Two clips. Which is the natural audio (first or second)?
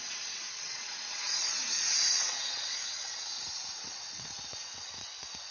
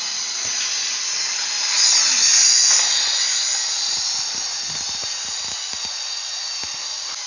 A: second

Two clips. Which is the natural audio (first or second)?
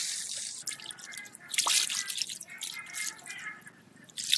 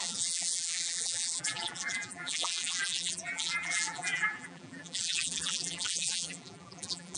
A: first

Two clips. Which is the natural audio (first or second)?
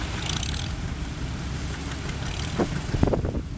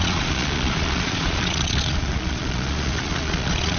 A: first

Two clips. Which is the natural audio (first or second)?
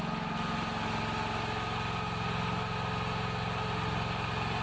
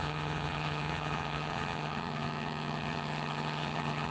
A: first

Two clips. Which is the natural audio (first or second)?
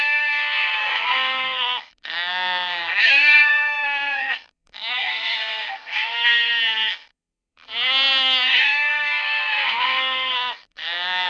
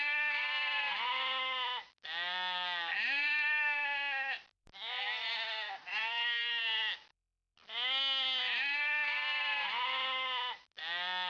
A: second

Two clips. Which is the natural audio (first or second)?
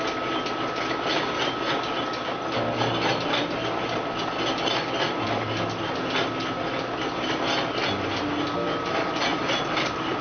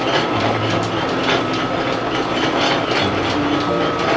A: first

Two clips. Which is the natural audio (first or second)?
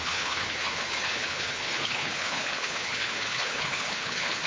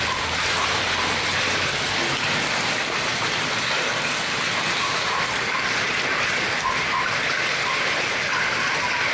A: second